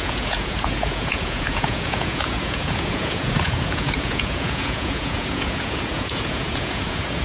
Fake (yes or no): yes